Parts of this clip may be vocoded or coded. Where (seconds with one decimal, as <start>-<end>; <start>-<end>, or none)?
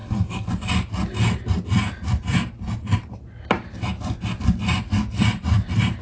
0.0-0.5